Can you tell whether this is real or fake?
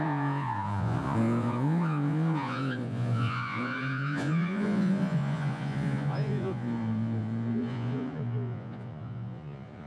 fake